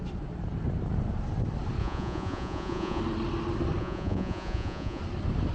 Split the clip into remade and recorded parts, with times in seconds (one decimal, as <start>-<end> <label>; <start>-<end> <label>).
0.0-1.8 recorded; 1.8-3.0 remade; 3.0-3.8 recorded; 3.8-5.0 remade; 5.0-5.5 recorded